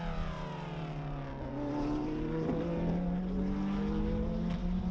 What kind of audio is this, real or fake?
real